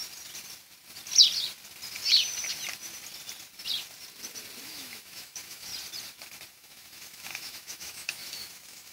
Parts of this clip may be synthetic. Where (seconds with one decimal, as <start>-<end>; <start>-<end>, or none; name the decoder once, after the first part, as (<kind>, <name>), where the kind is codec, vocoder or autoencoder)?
4.6-5.7 (autoencoder, DAC-VAE); 6.5-8.9